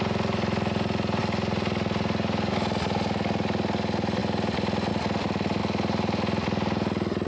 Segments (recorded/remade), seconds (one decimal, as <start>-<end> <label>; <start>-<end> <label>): 0.0-7.3 recorded